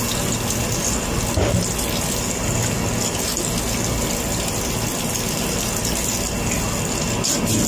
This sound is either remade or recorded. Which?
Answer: recorded